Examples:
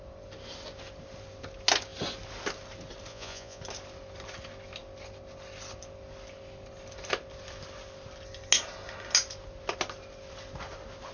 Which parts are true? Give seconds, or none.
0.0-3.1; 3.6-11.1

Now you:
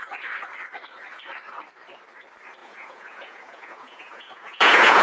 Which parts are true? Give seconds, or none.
0.0-2.6

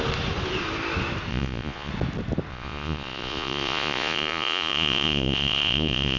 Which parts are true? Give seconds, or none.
0.0-1.3; 1.9-2.5

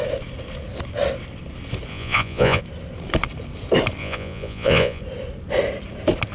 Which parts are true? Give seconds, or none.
0.0-1.9; 2.6-4.0; 5.0-6.3

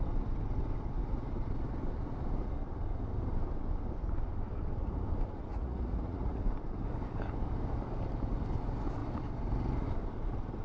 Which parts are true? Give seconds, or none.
0.0-5.5; 6.4-10.6

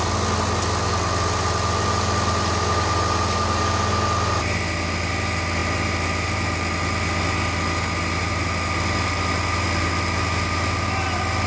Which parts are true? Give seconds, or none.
0.0-11.5